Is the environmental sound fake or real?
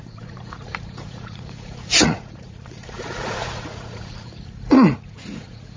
fake